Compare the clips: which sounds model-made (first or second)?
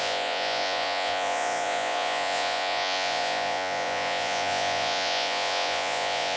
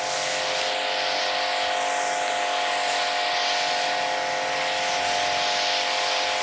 first